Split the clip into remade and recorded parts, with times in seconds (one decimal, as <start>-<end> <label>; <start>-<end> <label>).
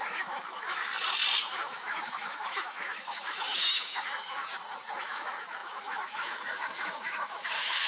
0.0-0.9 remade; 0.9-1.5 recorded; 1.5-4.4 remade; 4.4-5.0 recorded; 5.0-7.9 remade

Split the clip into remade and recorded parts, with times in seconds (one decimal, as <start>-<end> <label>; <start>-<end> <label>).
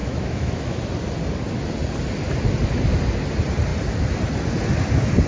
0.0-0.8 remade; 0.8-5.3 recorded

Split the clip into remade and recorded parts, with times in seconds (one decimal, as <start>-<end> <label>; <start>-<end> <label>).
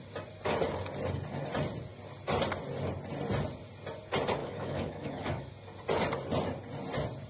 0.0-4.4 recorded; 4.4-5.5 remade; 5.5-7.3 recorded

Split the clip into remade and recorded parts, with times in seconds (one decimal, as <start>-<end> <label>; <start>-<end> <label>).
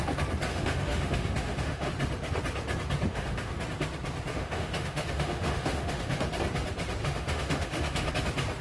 0.0-0.5 recorded; 0.5-1.9 remade; 1.9-3.1 recorded; 3.1-3.6 remade; 3.6-4.3 recorded; 4.3-6.3 remade; 6.3-7.0 recorded; 7.0-8.1 remade; 8.1-8.6 recorded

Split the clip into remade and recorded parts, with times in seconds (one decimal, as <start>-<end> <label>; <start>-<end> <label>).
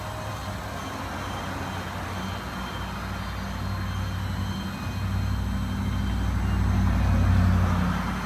0.0-8.3 recorded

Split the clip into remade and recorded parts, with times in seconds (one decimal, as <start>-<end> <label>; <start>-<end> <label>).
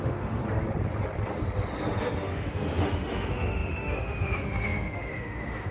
0.0-0.4 remade; 0.4-2.0 recorded; 2.0-5.7 remade